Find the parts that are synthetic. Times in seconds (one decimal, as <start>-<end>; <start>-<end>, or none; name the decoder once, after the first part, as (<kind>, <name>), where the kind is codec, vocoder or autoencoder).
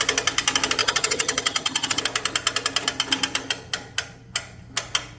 0.8-2.0 (vocoder, HiFi-GAN)